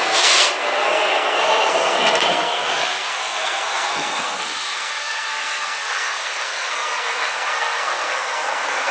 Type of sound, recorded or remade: remade